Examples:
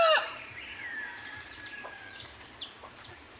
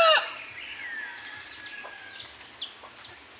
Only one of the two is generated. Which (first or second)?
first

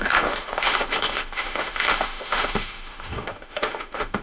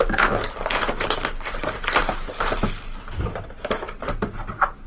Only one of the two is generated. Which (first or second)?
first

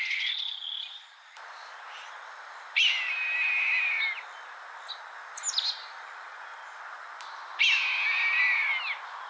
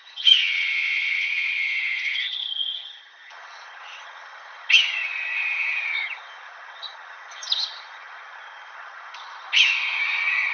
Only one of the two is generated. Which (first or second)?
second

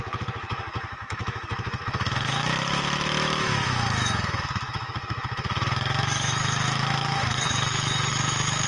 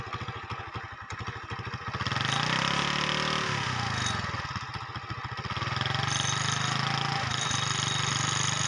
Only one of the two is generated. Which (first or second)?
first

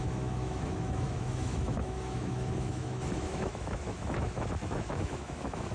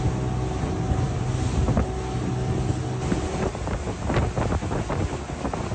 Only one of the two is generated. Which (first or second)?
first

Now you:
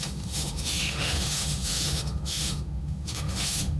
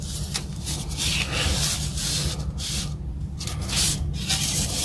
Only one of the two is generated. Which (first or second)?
first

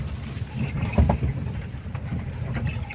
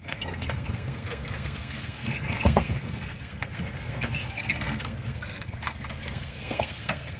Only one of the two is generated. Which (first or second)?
second